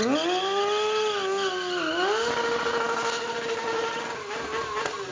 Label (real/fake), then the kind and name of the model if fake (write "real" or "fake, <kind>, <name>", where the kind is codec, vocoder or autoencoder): real